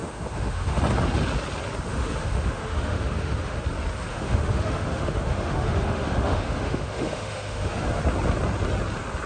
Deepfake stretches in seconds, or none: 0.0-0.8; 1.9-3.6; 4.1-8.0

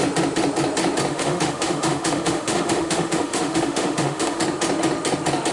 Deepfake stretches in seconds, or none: 1.1-4.4

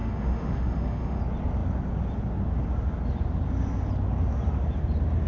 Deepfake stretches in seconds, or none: 0.0-1.2

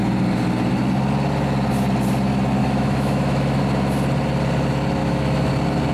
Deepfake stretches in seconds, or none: 2.6-3.6; 5.0-5.5

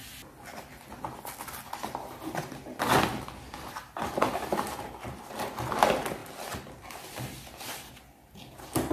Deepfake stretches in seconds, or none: none

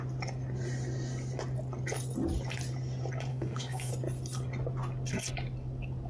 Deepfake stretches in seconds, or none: 3.3-3.9